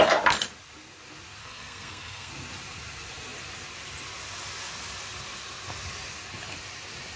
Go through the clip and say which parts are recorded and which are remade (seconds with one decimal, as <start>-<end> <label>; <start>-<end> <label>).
0.0-1.4 recorded; 1.4-2.3 remade; 2.3-7.2 recorded